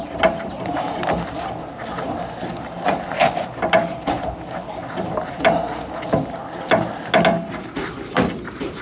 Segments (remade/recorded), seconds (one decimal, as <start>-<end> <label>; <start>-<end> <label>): 0.0-8.8 recorded